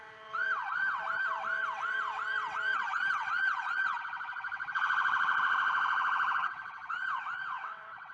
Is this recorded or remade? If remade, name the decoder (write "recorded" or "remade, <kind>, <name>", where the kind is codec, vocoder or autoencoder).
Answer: remade, vocoder, WaveNeXt